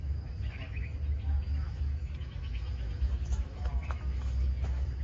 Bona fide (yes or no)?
no